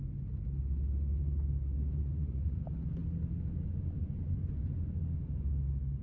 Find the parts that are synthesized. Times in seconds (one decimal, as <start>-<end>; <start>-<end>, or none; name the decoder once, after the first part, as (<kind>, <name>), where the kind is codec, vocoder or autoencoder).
2.0-2.6 (vocoder, Vocos)